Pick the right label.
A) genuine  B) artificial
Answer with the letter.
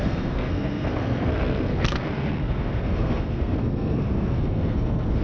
B